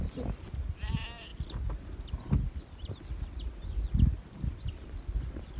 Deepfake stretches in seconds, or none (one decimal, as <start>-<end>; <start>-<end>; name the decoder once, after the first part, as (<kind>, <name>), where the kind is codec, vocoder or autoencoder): none